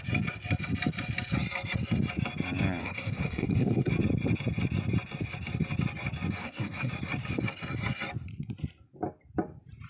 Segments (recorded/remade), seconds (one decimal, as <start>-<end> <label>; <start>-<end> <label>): 0.0-2.8 recorded; 2.8-3.9 remade; 3.9-6.4 recorded; 6.4-6.9 remade; 6.9-9.9 recorded